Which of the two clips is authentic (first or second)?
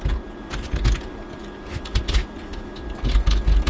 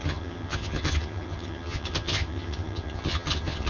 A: first